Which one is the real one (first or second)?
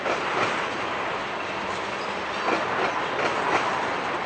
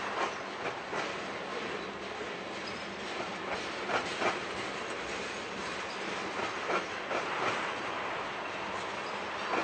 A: second